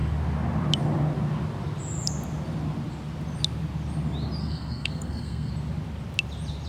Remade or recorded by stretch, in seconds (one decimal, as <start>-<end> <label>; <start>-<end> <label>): 0.0-4.4 recorded; 4.4-5.5 remade; 5.5-6.7 recorded